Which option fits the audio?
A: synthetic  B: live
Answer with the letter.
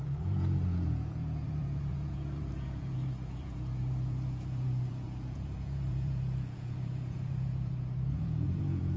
A